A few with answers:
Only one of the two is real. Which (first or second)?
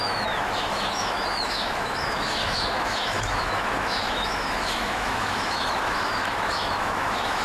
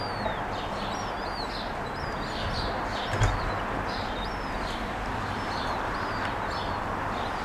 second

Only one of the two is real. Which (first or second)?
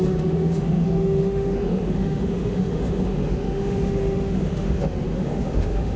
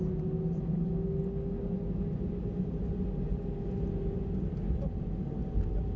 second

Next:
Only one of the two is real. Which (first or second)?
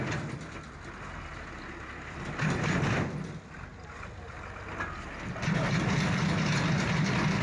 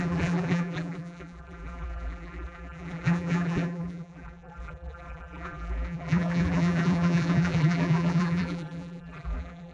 first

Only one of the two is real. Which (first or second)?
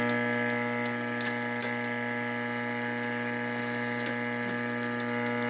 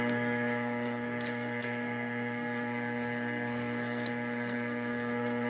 first